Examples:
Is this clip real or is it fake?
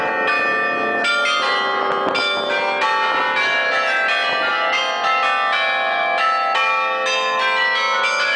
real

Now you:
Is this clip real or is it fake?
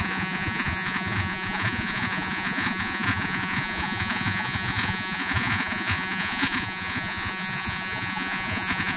fake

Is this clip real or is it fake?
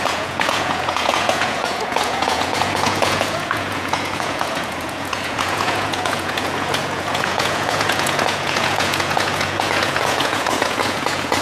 fake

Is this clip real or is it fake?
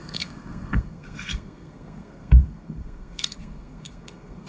fake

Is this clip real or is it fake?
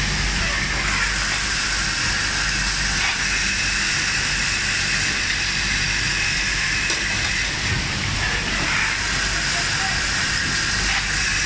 real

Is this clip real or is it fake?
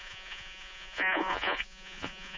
fake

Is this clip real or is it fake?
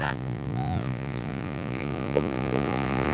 fake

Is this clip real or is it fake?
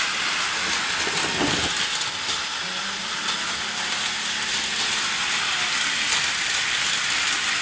real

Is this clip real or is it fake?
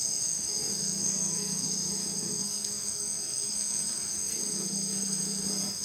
fake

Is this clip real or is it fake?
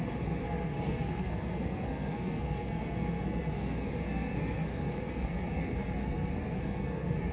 fake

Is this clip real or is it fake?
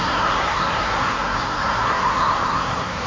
fake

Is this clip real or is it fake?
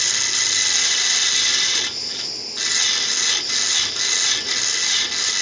real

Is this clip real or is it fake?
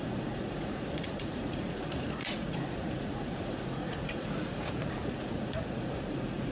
fake